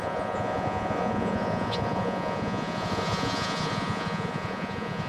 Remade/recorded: remade